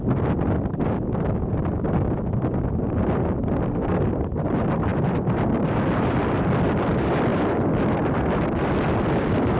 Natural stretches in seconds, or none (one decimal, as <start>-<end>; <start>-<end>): 1.5-3.9; 7.3-8.1